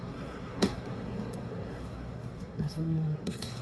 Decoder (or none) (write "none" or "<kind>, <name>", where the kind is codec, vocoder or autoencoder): codec, SNAC